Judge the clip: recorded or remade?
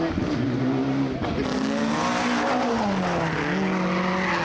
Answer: recorded